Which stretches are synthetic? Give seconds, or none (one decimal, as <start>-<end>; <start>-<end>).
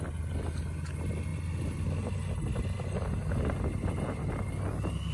none